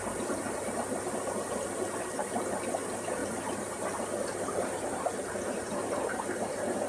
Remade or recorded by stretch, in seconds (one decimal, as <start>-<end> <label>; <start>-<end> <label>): 0.0-6.9 recorded